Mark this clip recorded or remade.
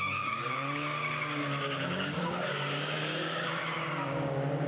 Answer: remade